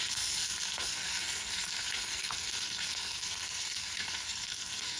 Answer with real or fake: fake